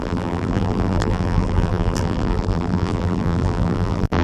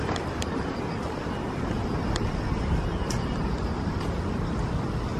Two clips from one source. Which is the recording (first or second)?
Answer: second